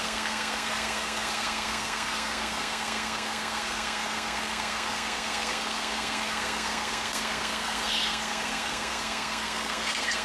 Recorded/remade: remade